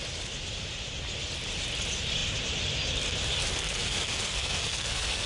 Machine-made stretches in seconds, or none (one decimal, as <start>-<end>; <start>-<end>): 3.5-5.3